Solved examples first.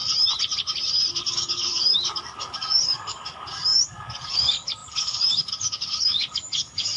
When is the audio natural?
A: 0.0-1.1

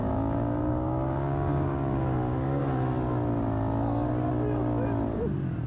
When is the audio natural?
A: 2.6-5.7

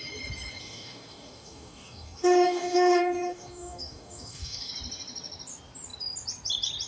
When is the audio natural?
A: 0.0-0.6; 4.7-6.9

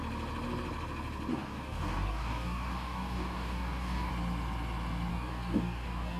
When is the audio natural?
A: 0.0-1.3; 4.1-5.1

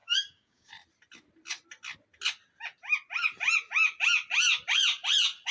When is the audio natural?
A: 0.7-5.5

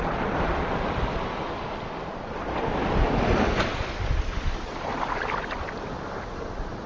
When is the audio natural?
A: 0.0-6.9

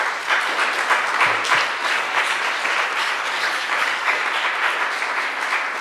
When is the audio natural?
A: 0.0-1.8; 2.4-3.0; 4.2-5.8

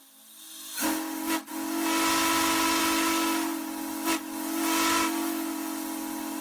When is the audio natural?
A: 0.0-6.4